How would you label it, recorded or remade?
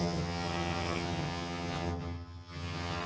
remade